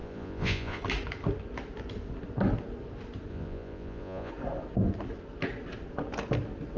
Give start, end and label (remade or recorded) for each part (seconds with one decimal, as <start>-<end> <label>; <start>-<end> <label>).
0.0-0.8 remade; 0.8-3.3 recorded; 3.3-4.3 remade; 4.3-6.8 recorded